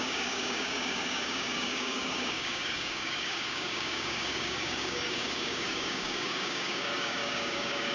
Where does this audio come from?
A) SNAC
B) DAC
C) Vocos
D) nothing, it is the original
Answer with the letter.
B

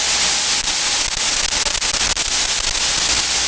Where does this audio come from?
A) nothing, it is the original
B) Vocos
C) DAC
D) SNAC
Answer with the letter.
A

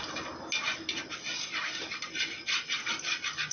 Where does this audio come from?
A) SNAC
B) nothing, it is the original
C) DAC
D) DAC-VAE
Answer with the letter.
B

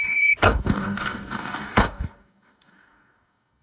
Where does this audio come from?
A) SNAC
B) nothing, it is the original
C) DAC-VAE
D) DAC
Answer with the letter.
D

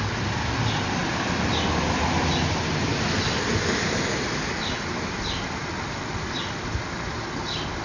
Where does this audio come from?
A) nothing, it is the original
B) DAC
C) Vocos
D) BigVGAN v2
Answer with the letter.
A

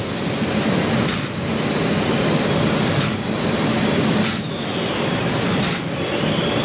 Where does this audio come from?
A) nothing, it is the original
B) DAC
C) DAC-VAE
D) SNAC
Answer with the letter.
A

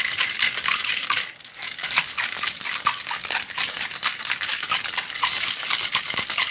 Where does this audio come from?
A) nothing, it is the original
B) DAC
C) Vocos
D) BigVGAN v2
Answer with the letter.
B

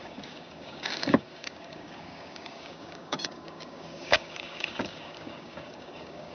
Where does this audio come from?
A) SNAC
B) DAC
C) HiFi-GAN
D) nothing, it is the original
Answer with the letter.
B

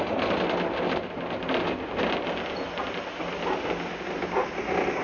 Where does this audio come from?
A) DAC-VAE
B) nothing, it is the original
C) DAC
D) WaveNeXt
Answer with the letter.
B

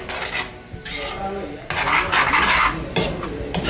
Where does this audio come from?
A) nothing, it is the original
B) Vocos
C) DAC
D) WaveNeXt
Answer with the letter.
A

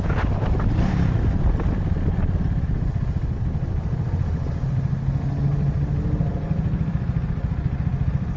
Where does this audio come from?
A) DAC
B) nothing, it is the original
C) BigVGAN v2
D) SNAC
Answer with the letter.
B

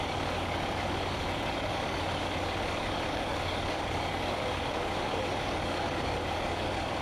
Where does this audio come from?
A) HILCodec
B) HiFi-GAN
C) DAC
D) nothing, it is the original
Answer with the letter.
C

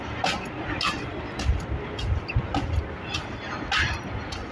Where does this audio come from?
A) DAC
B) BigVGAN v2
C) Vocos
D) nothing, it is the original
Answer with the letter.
D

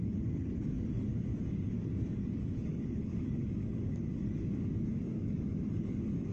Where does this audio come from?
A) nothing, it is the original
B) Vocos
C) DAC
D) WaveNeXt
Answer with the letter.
C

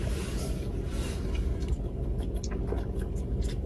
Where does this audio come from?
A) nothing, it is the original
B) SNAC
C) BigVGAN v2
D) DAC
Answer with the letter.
D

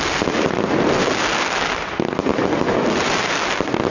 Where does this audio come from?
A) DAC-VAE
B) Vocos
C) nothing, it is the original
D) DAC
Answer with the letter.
C